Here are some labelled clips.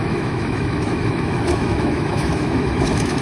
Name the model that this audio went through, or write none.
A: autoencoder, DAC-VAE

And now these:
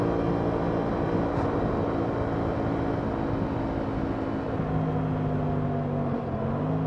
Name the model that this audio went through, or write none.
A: none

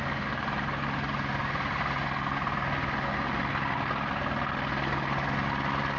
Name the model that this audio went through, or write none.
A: none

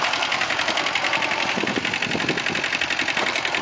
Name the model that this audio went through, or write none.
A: none